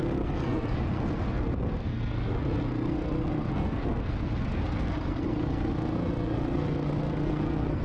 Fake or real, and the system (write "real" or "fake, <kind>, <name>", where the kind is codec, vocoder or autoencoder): fake, codec, SNAC